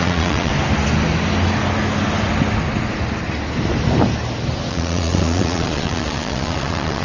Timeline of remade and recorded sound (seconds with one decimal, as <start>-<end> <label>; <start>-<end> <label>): 0.0-0.5 remade; 0.5-4.7 recorded; 4.7-7.0 remade